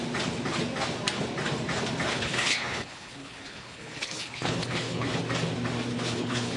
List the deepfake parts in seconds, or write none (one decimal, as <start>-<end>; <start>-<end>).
2.1-5.2; 5.9-6.6